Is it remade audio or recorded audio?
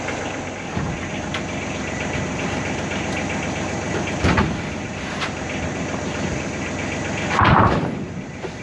remade